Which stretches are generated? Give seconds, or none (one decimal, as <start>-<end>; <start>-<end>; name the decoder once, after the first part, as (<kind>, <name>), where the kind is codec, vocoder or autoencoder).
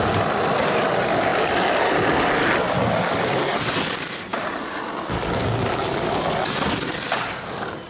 none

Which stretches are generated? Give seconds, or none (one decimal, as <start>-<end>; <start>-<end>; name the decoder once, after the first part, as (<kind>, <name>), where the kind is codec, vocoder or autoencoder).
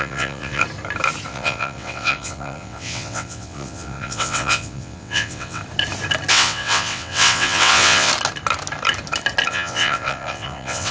0.0-0.6 (vocoder, WaveNeXt); 1.3-5.6; 6.3-8.1; 9.5-10.9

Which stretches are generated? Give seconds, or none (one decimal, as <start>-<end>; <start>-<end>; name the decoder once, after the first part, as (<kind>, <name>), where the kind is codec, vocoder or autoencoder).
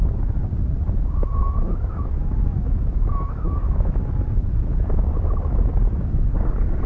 1.4-4.0 (autoencoder, DAC-VAE)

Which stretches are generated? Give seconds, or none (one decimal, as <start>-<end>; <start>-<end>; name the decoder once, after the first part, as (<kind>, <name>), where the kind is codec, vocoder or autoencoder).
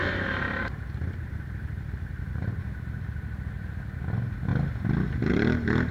0.0-4.5 (vocoder, BigVGAN v2); 5.3-5.9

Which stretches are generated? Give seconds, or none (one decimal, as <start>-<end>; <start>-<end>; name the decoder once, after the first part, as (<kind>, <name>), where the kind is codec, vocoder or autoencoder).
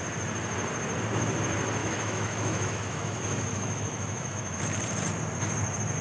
1.8-4.6 (autoencoder, DAC-VAE)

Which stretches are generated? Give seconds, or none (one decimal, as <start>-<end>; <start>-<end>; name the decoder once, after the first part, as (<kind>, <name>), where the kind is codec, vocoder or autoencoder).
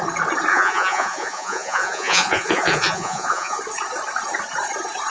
0.5-3.6 (vocoder, Vocos)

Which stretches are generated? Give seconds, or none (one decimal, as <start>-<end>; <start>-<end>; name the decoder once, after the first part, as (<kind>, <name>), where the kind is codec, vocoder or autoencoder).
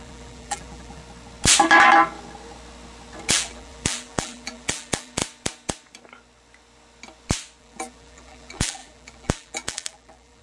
0.0-1.0 (vocoder, BigVGAN v2); 3.3-5.2; 7.6-10.4